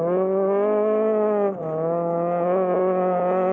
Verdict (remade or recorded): remade